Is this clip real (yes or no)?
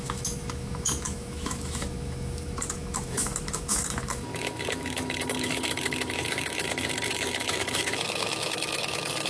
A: no